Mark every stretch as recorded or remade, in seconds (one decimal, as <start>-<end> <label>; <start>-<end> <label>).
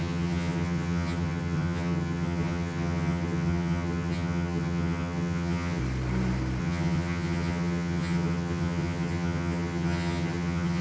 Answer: 0.0-5.8 remade; 5.8-6.6 recorded; 6.6-10.8 remade